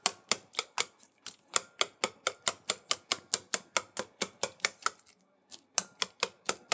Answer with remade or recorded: recorded